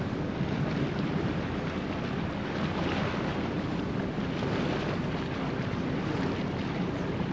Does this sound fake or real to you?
real